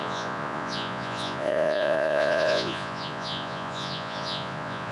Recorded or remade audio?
remade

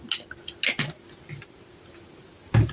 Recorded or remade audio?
recorded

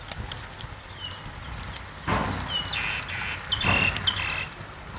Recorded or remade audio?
recorded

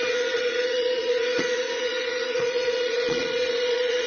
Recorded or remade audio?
remade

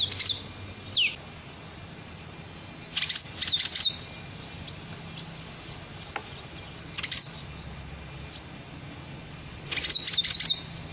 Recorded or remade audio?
recorded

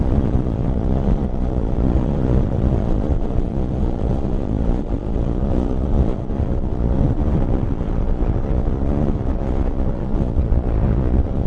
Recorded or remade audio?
remade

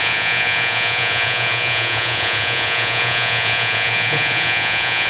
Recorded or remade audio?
remade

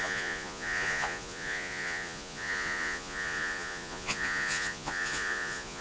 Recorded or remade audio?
remade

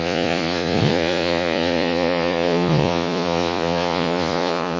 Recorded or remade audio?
remade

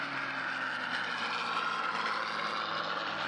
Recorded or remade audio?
recorded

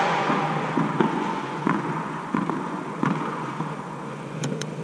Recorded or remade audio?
remade